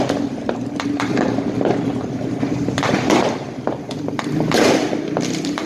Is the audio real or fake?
fake